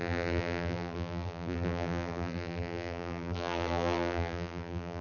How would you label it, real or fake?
fake